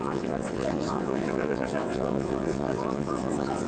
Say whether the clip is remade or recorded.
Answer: remade